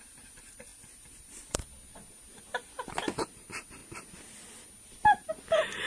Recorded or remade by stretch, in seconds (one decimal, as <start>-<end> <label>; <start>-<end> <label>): 0.0-5.9 recorded